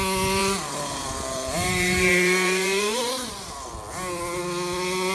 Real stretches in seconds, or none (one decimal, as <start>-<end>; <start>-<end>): 0.0-0.4; 3.5-5.1